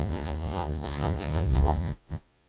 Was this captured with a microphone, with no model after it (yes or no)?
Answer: no